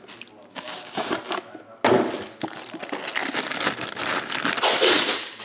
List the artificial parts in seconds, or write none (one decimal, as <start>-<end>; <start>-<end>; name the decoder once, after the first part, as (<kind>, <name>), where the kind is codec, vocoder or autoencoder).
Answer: 0.4-1.1 (codec, DAC)